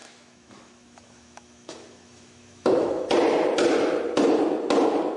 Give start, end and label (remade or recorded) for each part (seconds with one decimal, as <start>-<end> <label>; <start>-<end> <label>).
0.0-3.1 remade; 3.1-5.2 recorded